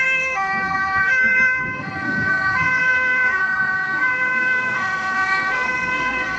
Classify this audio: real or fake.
fake